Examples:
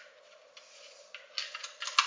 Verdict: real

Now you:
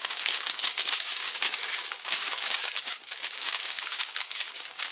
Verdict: fake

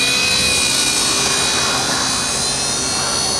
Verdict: real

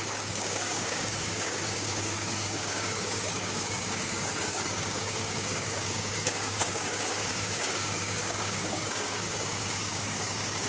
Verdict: fake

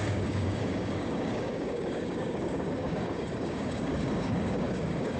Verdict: fake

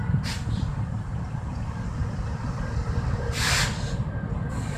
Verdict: real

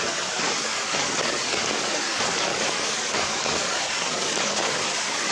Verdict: fake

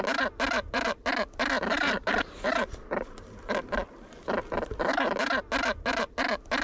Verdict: real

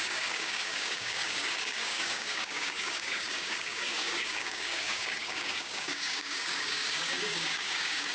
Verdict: fake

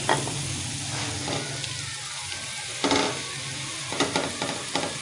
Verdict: real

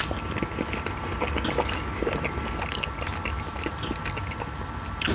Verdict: real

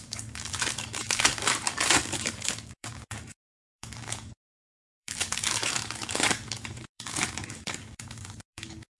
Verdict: fake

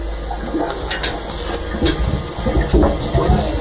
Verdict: real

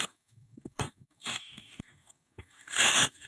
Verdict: fake